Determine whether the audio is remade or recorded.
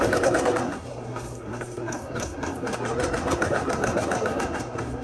remade